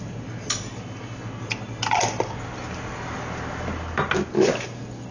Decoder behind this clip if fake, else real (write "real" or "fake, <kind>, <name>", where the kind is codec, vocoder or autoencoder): real